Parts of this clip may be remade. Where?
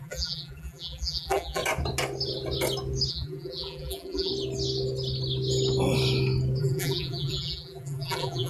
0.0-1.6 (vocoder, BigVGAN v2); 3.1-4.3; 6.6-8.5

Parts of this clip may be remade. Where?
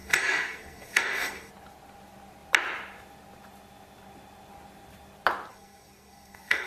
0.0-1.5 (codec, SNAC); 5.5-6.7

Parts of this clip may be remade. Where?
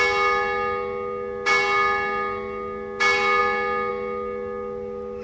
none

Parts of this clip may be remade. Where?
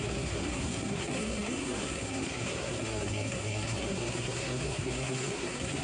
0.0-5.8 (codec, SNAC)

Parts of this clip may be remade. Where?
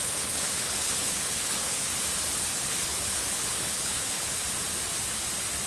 0.0-1.9 (codec, HILCodec); 2.4-4.4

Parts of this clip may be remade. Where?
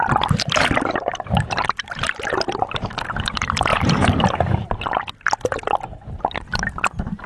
3.7-4.2 (vocoder, BigVGAN v2)